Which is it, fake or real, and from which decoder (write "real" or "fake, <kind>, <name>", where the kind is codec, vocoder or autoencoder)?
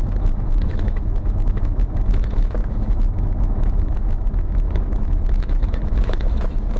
fake, autoencoder, DAC-VAE